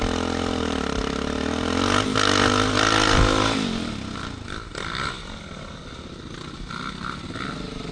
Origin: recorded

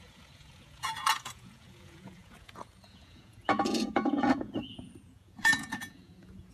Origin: remade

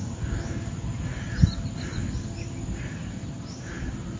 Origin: recorded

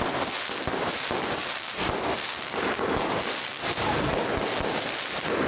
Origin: recorded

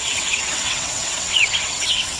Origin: remade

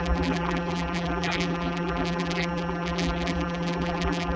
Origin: remade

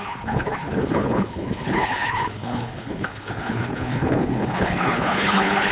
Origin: remade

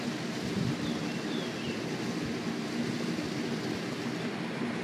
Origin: recorded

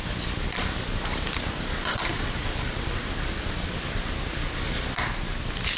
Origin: recorded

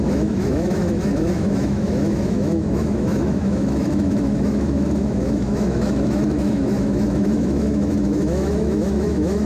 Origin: remade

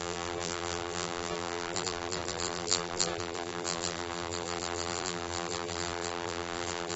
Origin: remade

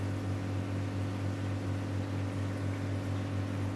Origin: recorded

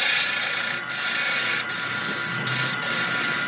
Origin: recorded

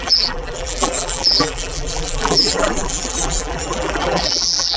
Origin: remade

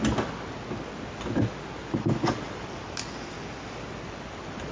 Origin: recorded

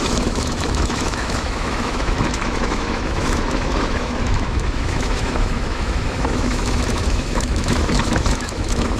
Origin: remade